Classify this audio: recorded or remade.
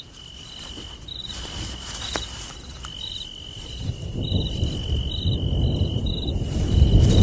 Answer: recorded